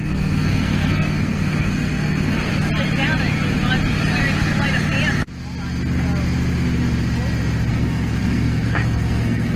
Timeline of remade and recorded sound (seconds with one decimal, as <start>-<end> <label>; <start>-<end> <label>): 0.0-2.5 remade; 2.5-7.7 recorded; 7.7-9.6 remade